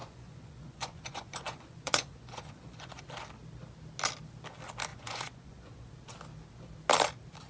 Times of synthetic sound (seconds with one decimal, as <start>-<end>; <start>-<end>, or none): 0.0-3.0; 4.9-5.9